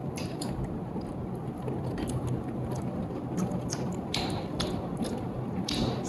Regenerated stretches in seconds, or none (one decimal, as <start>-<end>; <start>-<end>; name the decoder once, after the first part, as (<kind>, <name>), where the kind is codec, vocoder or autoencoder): none